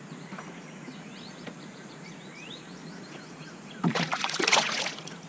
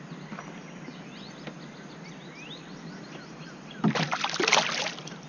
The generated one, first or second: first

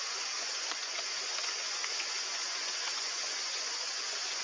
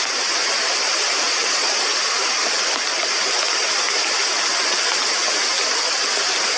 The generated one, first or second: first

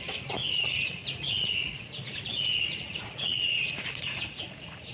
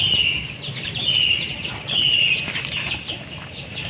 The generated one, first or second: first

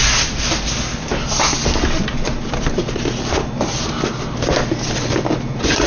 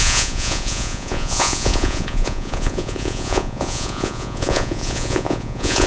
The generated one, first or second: second